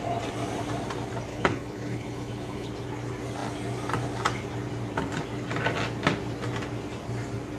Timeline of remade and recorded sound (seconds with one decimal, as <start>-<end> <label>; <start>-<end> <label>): 0.0-1.3 recorded; 1.3-2.7 remade; 2.7-7.6 recorded

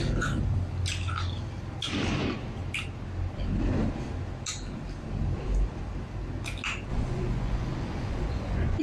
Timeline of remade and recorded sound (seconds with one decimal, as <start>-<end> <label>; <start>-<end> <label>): 0.0-6.9 recorded; 6.9-8.8 remade

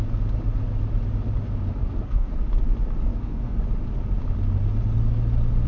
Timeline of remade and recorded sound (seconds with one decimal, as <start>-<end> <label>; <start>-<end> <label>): 0.0-1.8 recorded; 1.8-2.3 remade; 2.3-3.1 recorded; 3.1-3.6 remade; 3.6-5.7 recorded

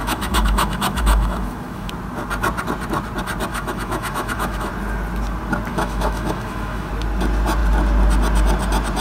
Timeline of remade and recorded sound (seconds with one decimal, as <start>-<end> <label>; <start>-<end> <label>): 0.0-1.9 remade; 1.9-3.5 recorded; 3.5-4.7 remade; 4.7-5.7 recorded; 5.7-6.9 remade; 6.9-9.0 recorded